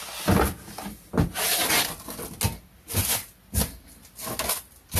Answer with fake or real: real